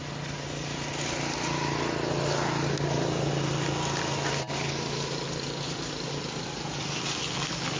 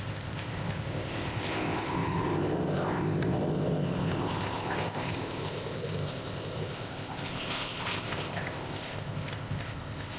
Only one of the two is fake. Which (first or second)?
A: second